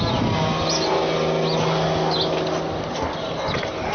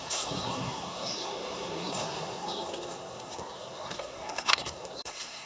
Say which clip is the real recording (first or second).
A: first